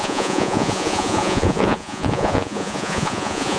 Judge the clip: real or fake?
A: fake